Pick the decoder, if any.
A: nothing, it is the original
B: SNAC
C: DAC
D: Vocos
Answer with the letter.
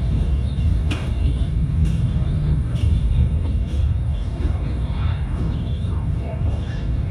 C